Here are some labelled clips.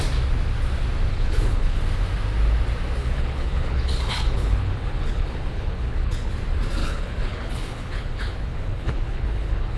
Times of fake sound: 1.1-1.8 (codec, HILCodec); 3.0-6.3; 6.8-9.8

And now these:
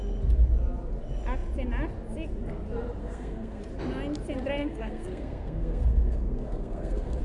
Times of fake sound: 3.0-3.6 (codec, SNAC); 4.6-7.2

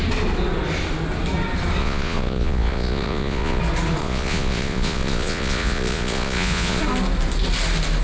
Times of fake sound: 1.8-3.6 (vocoder, Vocos); 4.0-6.8

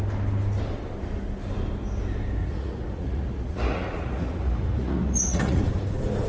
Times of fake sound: 2.4-5.6 (vocoder, Vocos)

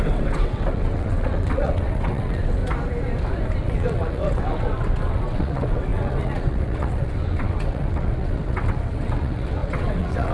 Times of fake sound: 0.0-2.6 (vocoder, WaveNeXt); 3.6-10.3